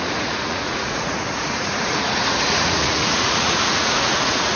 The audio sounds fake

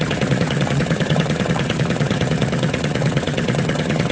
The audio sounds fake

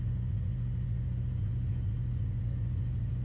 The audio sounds fake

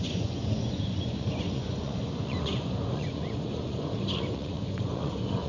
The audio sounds fake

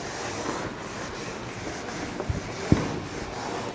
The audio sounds real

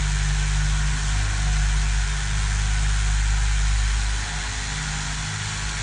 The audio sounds real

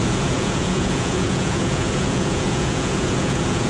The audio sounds fake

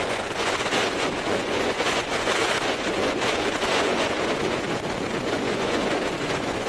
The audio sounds fake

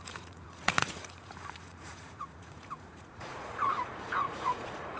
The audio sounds fake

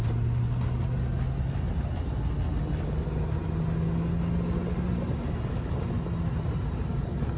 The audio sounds real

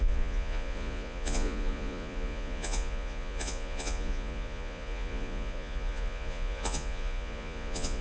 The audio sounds fake